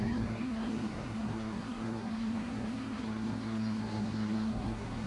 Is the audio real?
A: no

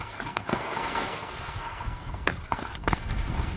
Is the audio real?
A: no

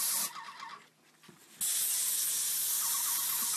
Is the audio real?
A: yes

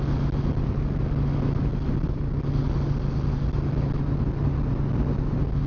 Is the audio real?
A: yes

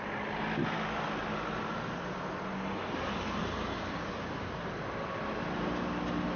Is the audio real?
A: yes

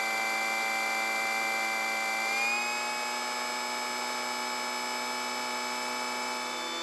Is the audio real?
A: yes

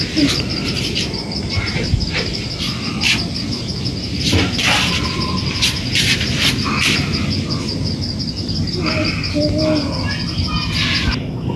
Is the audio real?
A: yes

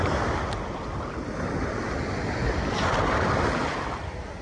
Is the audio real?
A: yes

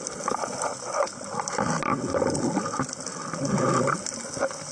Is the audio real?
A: yes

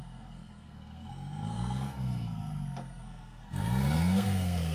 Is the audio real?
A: no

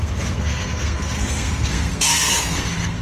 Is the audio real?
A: no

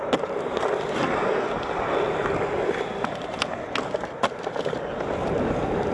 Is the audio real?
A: yes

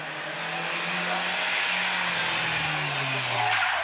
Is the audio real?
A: yes